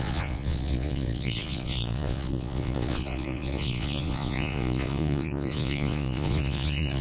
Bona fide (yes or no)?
no